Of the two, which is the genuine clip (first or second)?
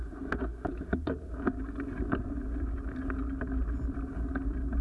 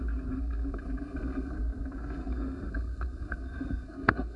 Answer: first